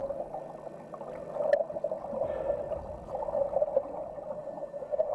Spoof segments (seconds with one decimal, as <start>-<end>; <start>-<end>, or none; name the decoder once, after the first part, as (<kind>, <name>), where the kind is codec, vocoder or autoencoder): 4.4-5.1 (vocoder, Vocos)